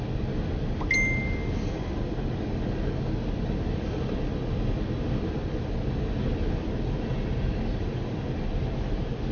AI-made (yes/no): no